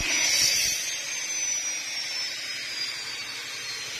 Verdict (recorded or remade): recorded